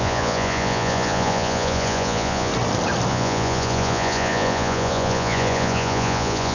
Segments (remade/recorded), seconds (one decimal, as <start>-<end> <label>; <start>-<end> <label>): 0.0-2.5 remade; 2.5-3.1 recorded; 3.1-6.5 remade